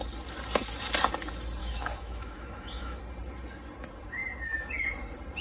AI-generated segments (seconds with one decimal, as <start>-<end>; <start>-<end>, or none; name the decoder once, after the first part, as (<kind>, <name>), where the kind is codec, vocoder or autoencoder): 1.6-3.0 (autoencoder, DAC-VAE)